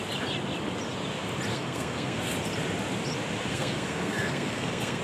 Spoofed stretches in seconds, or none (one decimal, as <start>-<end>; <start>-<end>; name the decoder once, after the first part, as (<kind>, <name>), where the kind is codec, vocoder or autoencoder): 1.5-2.2 (codec, SNAC); 3.5-5.0